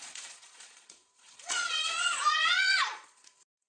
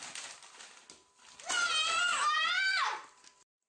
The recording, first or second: second